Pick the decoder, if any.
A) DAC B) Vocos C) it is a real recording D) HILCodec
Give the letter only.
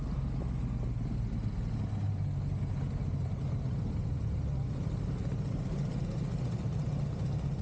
C